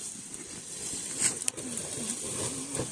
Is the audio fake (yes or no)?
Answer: no